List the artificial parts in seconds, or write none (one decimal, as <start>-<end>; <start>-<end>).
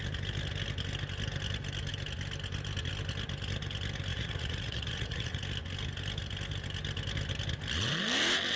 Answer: 4.1-5.4